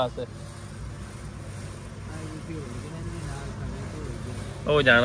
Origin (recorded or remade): recorded